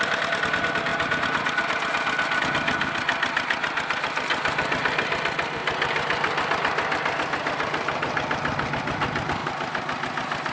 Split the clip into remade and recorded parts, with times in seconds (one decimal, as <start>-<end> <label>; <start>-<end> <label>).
0.0-10.5 recorded